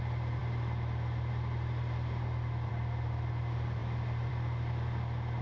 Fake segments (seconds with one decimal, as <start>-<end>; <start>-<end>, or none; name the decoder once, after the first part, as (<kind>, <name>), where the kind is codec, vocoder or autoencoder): none